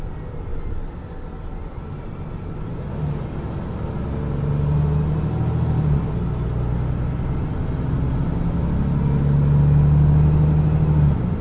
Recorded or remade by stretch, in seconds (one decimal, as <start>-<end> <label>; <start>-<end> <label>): 0.0-11.4 recorded